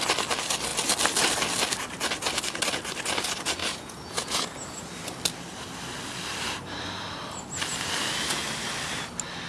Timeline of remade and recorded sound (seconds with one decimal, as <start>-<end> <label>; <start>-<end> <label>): 0.0-3.6 recorded; 3.6-4.8 remade; 4.8-9.5 recorded